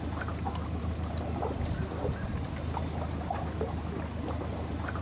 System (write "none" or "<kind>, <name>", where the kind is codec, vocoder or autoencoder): none